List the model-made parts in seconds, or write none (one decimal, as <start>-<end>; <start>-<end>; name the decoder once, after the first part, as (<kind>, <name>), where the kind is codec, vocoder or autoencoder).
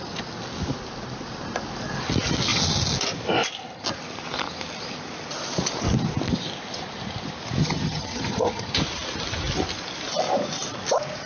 7.6-8.7 (vocoder, HiFi-GAN)